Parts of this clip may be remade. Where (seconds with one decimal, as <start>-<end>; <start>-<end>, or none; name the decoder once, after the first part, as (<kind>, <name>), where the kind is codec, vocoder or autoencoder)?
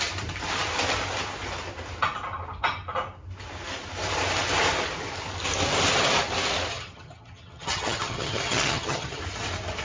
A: 6.7-9.2 (vocoder, HiFi-GAN)